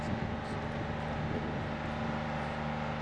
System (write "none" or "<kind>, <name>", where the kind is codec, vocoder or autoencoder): none